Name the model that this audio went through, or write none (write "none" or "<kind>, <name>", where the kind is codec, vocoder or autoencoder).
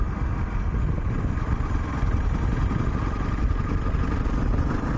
none